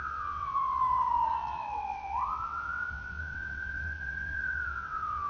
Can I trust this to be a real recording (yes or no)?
no